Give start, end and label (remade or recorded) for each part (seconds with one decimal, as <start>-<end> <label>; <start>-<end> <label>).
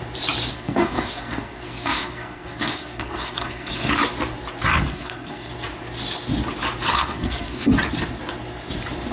0.0-0.5 recorded; 0.5-3.9 remade; 3.9-4.9 recorded; 4.9-5.5 remade; 5.5-6.9 recorded; 6.9-7.7 remade; 7.7-9.1 recorded